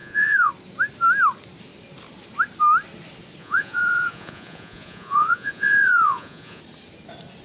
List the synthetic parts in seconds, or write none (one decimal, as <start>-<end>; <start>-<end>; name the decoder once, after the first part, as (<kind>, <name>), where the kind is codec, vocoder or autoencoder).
0.0-0.5 (vocoder, Vocos); 3.4-6.6